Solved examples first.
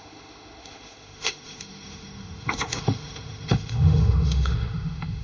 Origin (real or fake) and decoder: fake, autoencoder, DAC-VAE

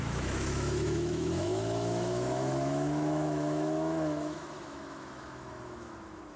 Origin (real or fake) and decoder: fake, autoencoder, DAC-VAE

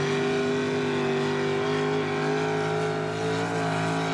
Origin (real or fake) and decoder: real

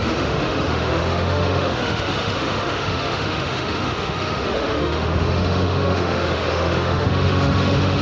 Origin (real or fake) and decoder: fake, autoencoder, DAC-VAE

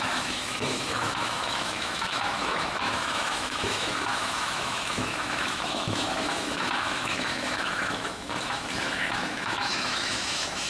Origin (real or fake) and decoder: fake, autoencoder, DAC-VAE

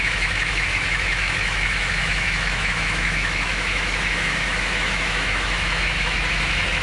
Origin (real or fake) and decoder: fake, autoencoder, DAC-VAE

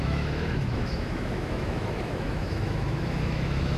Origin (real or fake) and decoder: fake, autoencoder, DAC-VAE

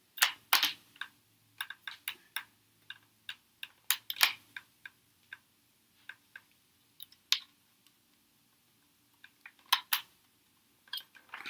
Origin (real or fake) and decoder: real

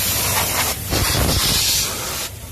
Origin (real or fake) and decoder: real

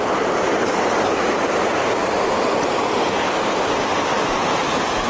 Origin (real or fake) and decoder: real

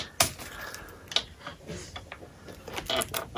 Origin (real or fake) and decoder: real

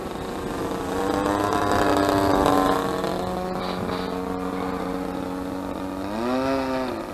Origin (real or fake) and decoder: real